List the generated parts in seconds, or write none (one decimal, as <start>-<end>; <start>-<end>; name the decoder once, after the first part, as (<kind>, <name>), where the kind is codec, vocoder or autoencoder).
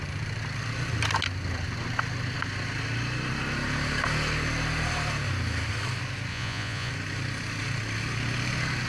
6.3-6.9 (vocoder, Vocos)